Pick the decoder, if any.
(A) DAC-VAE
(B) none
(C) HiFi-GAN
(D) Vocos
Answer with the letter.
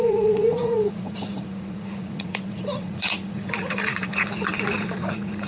D